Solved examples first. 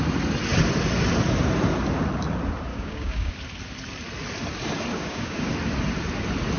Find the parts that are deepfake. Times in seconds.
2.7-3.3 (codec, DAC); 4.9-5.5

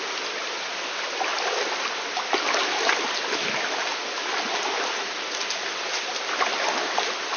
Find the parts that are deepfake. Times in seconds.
none

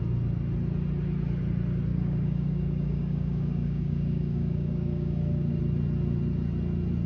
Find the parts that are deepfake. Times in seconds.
1.9-5.6 (codec, DAC)

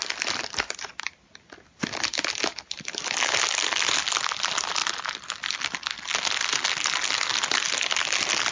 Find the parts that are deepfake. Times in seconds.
none